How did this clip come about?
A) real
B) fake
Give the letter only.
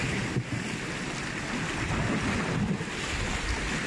A